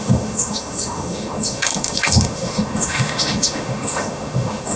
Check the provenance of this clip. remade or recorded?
remade